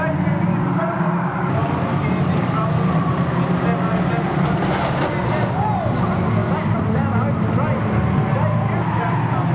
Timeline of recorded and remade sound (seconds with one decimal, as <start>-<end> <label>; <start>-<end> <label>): 0.0-9.5 recorded